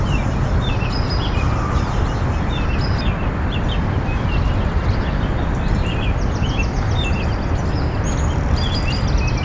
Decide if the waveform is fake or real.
real